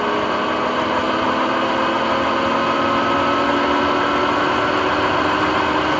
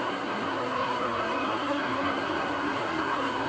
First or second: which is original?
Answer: first